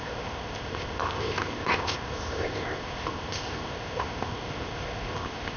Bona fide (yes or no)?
no